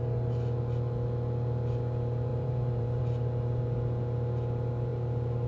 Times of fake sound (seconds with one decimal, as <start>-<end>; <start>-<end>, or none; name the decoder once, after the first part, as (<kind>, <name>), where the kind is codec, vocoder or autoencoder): 2.3-3.0 (vocoder, BigVGAN v2)